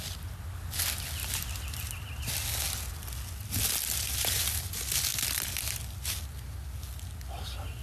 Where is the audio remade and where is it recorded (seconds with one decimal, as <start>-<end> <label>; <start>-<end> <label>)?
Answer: 0.0-7.8 recorded